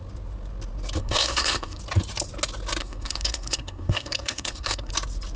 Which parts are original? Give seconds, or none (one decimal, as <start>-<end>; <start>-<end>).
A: 0.0-1.0; 1.8-2.8; 4.9-5.4